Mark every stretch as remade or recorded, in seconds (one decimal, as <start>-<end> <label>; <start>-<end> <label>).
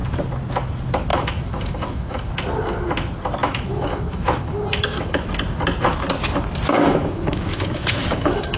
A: 0.0-1.1 recorded; 1.1-2.3 remade; 2.3-3.4 recorded; 3.4-5.3 remade; 5.3-6.8 recorded; 6.8-8.6 remade